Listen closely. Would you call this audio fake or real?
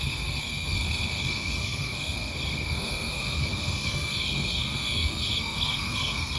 fake